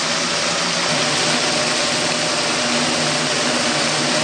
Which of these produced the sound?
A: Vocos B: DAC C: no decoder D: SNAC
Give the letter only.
C